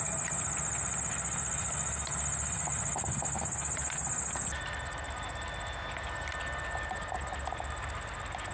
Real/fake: real